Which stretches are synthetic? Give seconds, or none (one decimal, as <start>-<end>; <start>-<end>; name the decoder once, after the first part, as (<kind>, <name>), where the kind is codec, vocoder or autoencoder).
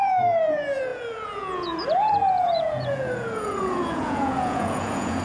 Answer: 0.0-5.2 (vocoder, Vocos)